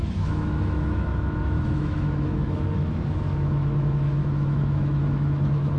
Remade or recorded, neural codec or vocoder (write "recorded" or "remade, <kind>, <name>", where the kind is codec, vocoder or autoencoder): remade, autoencoder, DAC-VAE